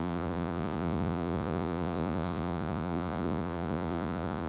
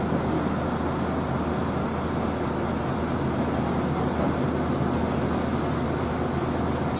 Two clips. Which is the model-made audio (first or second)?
first